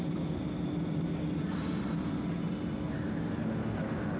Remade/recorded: recorded